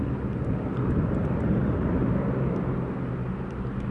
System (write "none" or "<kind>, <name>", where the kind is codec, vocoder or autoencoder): none